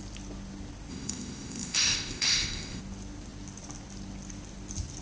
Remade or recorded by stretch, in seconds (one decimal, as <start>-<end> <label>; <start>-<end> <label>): 0.0-0.9 recorded; 0.9-2.8 remade; 2.8-5.0 recorded

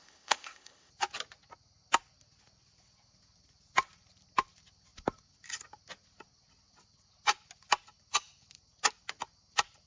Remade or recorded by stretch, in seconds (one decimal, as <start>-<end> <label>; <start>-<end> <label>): 0.0-0.9 remade; 0.9-9.9 recorded